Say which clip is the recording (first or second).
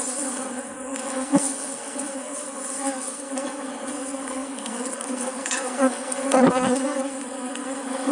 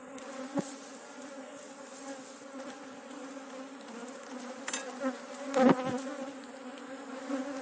second